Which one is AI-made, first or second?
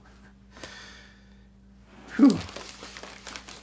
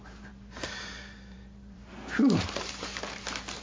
second